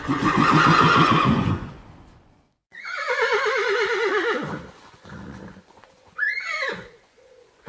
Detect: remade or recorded remade